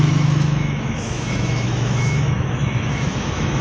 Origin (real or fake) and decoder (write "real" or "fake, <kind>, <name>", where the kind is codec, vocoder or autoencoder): fake, autoencoder, DAC-VAE